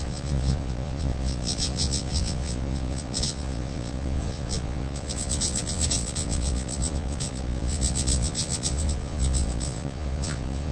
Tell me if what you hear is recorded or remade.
remade